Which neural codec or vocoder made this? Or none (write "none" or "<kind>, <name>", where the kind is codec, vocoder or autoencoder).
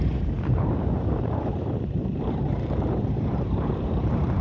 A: vocoder, BigVGAN v2